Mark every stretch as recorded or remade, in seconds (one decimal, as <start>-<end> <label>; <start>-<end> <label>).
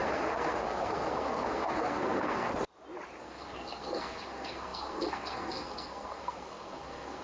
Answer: 0.0-2.5 remade; 2.5-3.2 recorded; 3.2-7.2 remade